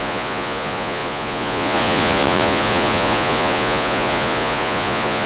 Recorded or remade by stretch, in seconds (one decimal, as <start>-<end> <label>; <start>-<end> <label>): 0.0-5.3 remade